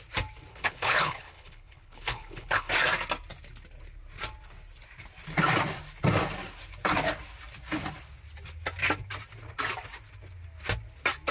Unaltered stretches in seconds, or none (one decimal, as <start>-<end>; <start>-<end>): 0.0-0.5; 2.7-11.3